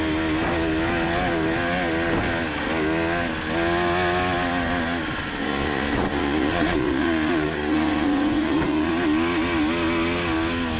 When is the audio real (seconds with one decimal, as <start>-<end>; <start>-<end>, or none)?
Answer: 0.0-5.4; 8.9-10.8

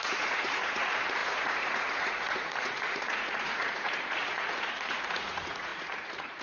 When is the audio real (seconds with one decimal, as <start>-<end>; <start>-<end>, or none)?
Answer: none

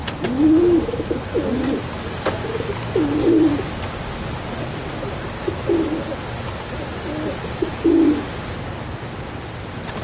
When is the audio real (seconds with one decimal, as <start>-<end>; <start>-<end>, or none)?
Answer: 0.0-10.0